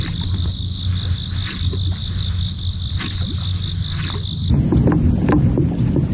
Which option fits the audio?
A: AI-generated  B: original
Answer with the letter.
B